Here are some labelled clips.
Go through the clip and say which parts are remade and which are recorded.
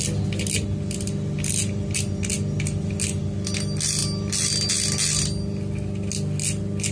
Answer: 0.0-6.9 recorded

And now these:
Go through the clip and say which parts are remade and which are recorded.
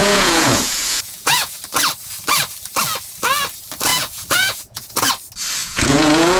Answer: 0.0-1.6 remade; 1.6-3.9 recorded; 3.9-5.1 remade; 5.1-5.6 recorded; 5.6-6.4 remade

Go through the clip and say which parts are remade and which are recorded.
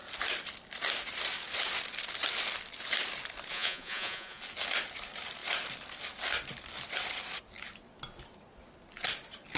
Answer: 0.0-3.5 recorded; 3.5-4.4 remade; 4.4-9.6 recorded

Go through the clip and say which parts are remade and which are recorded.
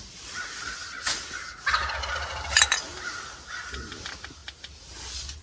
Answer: 0.0-5.4 recorded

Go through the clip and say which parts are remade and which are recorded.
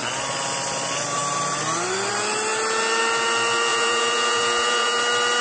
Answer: 0.0-3.7 recorded; 3.7-5.0 remade; 5.0-5.4 recorded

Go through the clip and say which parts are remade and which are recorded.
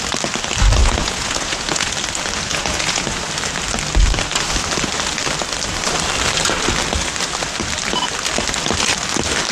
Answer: 0.0-0.8 recorded; 0.8-1.9 remade; 1.9-2.5 recorded; 2.5-3.2 remade; 3.2-9.5 recorded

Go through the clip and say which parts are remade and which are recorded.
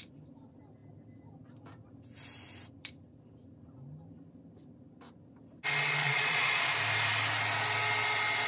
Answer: 0.0-6.0 recorded; 6.0-6.7 remade; 6.7-8.5 recorded